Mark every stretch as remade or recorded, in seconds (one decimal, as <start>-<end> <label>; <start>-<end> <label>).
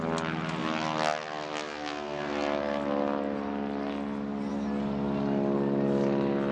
0.0-6.5 recorded